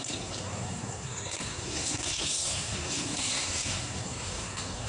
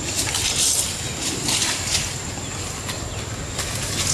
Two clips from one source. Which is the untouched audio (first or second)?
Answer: second